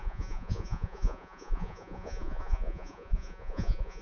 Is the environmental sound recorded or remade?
remade